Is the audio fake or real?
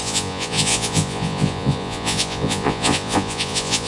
fake